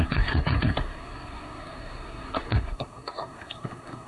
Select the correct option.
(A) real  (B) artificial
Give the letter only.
B